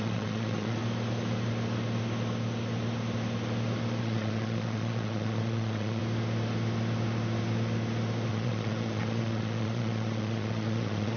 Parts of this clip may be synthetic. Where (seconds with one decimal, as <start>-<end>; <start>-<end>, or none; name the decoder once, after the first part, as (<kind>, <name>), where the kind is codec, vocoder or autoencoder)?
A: 0.0-0.8 (vocoder, Vocos); 4.0-6.0; 8.3-11.2